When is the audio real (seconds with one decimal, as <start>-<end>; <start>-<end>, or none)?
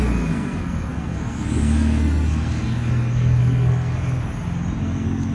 4.2-4.8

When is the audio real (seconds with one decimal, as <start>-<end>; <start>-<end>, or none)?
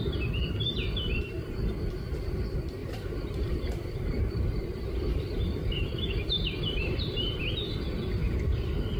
0.0-0.7; 1.4-2.8; 7.4-9.0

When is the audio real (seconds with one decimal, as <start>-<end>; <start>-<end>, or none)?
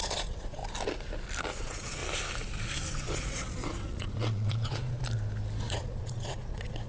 0.6-1.5; 2.0-2.9; 5.0-5.6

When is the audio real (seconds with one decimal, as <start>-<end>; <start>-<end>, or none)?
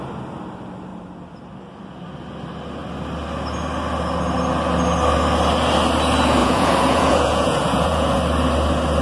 0.0-6.4; 8.2-9.0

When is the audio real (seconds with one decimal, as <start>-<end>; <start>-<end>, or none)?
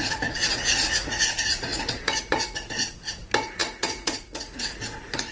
none